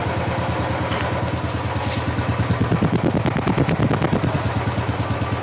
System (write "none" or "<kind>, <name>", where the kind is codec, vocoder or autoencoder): none